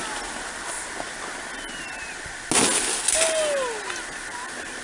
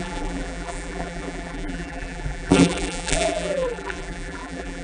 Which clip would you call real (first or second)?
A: first